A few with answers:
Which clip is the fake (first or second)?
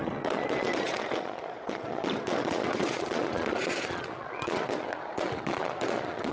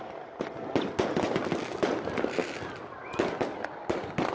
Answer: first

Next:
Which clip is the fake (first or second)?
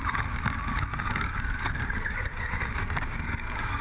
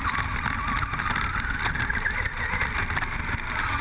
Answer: first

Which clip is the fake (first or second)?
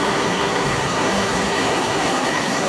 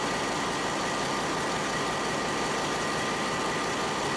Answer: first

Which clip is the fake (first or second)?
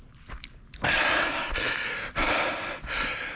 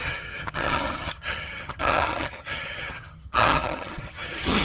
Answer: second